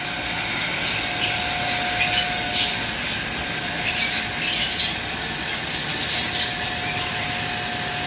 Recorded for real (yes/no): yes